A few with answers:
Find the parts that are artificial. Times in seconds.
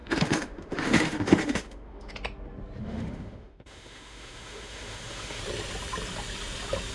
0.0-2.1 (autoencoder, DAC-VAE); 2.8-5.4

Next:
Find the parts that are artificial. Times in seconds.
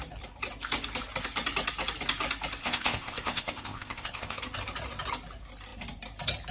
2.6-4.4 (codec, ZipCodec)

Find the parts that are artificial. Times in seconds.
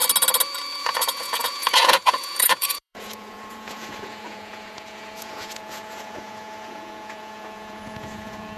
0.8-8.6 (vocoder, Vocos)